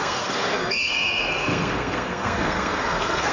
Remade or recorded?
remade